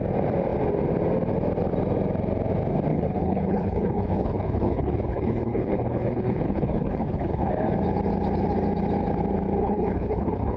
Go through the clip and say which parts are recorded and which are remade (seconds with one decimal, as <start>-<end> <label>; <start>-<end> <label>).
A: 0.0-2.9 recorded; 2.9-7.5 remade; 7.5-9.6 recorded; 9.6-10.6 remade